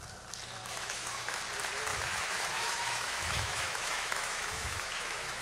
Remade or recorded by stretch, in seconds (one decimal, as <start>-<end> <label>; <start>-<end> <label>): 0.0-0.6 recorded; 0.6-1.4 remade; 1.4-1.9 recorded; 1.9-5.4 remade